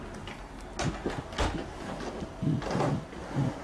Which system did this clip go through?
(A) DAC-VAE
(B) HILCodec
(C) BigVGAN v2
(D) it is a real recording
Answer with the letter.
D